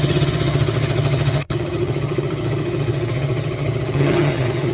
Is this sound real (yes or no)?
no